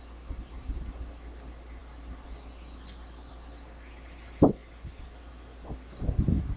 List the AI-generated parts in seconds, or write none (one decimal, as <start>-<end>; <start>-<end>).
none